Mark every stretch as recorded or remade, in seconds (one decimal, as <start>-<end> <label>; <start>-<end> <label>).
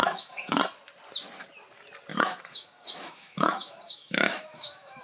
0.0-0.6 remade; 0.6-2.1 recorded; 2.1-5.0 remade